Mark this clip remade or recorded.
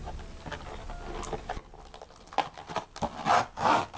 recorded